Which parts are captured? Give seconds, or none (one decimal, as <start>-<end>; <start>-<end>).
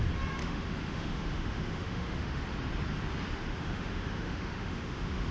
0.0-0.4; 2.4-3.4